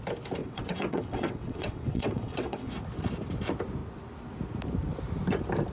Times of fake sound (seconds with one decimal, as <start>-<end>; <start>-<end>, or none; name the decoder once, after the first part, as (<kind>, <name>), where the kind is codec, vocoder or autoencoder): 0.4-2.7 (vocoder, WaveNeXt)